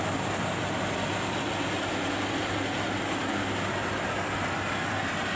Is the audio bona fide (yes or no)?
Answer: yes